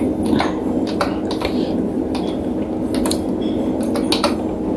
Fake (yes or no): no